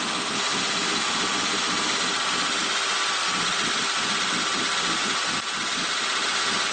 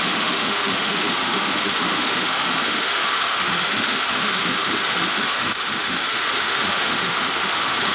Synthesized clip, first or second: second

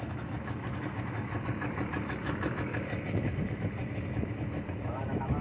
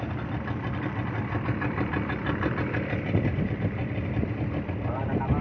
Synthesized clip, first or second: first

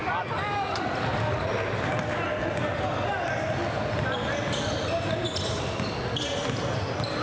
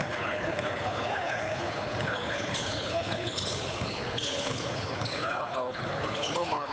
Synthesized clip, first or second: second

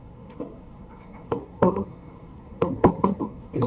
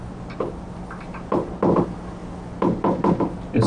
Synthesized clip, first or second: first